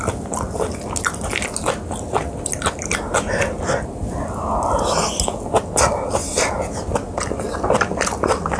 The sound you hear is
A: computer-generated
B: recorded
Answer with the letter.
B